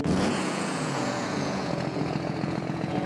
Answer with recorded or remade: remade